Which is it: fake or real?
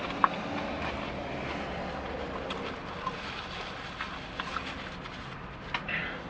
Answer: real